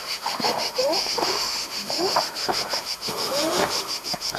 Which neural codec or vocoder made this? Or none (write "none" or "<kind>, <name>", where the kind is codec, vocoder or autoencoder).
autoencoder, DAC-VAE